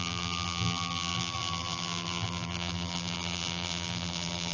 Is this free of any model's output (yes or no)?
no